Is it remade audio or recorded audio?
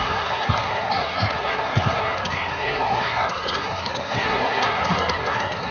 remade